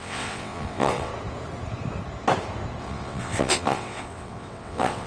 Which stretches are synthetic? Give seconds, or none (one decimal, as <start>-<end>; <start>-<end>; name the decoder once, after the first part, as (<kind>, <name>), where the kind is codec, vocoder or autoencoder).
0.0-1.1 (vocoder, WaveNeXt); 2.8-5.1